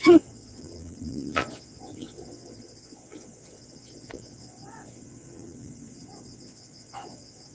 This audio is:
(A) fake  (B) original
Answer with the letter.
A